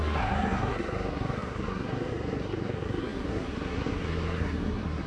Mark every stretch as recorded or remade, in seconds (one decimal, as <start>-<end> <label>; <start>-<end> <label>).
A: 0.0-5.1 remade